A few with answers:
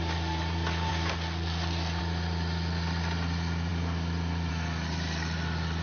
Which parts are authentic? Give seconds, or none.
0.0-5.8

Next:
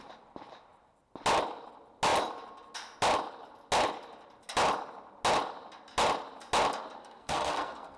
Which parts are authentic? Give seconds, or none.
0.0-7.0

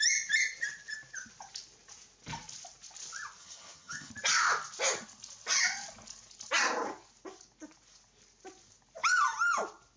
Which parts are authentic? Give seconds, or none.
0.0-3.4; 4.1-10.0

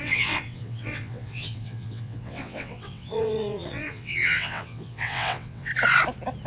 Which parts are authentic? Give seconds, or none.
5.7-6.5